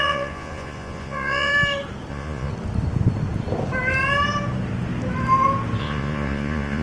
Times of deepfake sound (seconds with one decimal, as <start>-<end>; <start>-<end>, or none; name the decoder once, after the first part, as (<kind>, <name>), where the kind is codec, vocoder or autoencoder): 0.0-1.5 (vocoder, Vocos); 2.1-2.5; 5.8-6.8

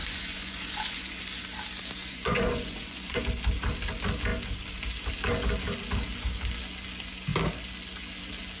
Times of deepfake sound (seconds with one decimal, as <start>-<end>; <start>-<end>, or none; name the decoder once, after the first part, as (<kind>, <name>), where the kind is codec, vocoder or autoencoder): 0.0-1.2 (vocoder, Vocos); 2.0-3.2

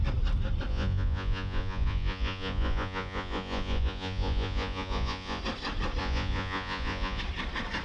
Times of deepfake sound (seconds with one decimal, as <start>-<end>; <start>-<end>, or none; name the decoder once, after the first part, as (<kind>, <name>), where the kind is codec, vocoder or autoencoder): 0.7-5.4 (vocoder, Vocos); 6.0-7.2

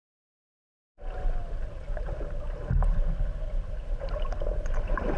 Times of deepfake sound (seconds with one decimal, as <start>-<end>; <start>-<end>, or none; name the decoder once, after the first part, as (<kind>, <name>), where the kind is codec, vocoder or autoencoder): none

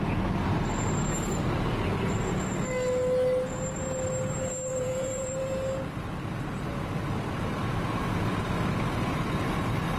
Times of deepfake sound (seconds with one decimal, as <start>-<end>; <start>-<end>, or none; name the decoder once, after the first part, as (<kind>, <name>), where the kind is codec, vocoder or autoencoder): 4.7-5.4 (vocoder, Vocos)

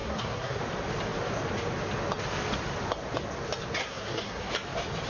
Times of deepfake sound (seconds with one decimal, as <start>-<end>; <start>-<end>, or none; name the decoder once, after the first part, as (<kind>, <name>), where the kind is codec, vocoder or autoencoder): 0.0-0.6 (codec, SNAC); 3.8-4.5

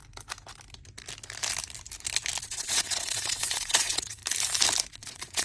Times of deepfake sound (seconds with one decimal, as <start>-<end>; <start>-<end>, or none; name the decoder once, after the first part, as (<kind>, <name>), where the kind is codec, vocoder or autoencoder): 2.4-4.2 (vocoder, WaveNeXt); 4.9-5.4